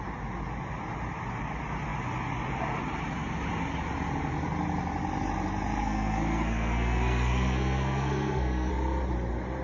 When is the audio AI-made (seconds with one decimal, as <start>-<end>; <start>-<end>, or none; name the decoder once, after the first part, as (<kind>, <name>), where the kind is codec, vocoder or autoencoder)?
5.8-8.7 (codec, SNAC)